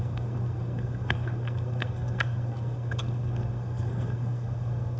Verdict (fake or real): fake